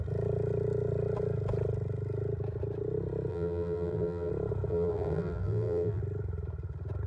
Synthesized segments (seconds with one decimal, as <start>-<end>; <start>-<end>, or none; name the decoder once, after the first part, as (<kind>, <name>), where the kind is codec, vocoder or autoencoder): 3.3-4.3 (vocoder, BigVGAN v2); 4.7-6.0